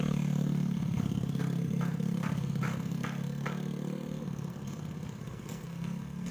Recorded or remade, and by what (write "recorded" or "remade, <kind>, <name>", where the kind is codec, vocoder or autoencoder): remade, codec, SNAC